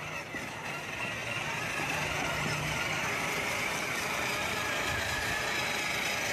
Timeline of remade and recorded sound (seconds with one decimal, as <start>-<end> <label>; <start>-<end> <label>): 0.0-1.2 recorded; 1.2-5.0 remade; 5.0-6.3 recorded